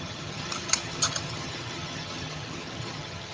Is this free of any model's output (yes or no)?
no